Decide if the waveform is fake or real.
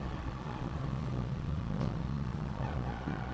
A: fake